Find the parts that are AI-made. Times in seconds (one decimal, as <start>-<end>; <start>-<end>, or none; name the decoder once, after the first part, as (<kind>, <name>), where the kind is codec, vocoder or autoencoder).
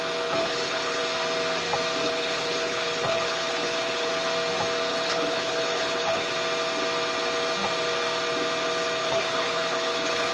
0.4-1.0 (codec, HILCodec); 2.0-4.1; 4.9-6.3; 9.0-10.3